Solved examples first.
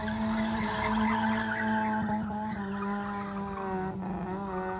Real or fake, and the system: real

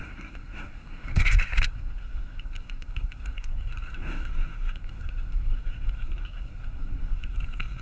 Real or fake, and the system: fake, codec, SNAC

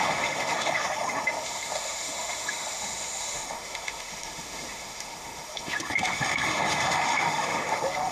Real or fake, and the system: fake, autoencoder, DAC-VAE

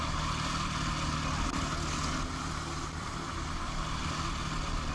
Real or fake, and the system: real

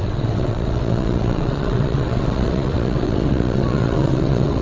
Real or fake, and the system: fake, vocoder, WaveNeXt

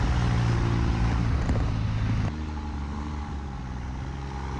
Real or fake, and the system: real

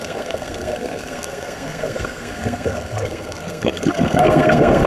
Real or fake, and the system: fake, codec, SNAC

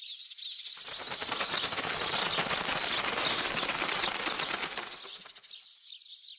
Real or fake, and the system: real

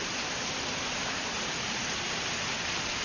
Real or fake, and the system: real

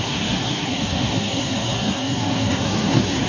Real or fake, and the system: fake, codec, SNAC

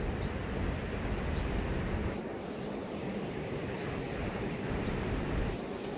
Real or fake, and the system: fake, vocoder, BigVGAN v2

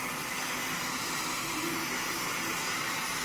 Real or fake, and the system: fake, vocoder, BigVGAN v2